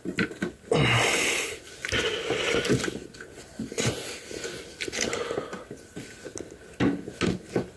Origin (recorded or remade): recorded